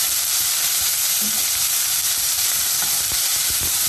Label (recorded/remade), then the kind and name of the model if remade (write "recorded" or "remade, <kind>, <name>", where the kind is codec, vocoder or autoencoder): remade, vocoder, BigVGAN v2